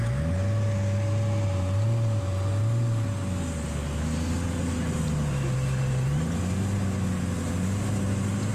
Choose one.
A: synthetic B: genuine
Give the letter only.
B